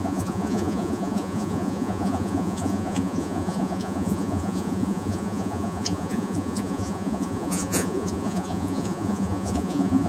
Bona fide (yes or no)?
no